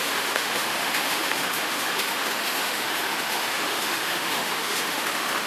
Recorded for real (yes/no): no